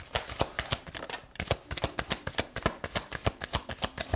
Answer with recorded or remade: recorded